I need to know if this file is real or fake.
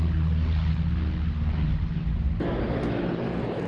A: real